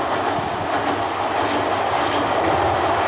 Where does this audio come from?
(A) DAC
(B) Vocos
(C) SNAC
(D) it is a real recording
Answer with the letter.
D